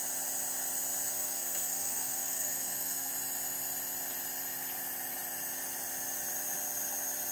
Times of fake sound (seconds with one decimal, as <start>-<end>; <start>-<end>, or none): 1.1-3.1